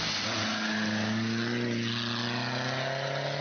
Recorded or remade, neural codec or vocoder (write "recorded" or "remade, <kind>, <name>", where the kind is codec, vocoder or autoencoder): recorded